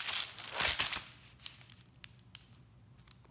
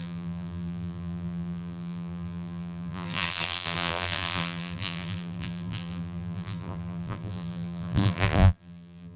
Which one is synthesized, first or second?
second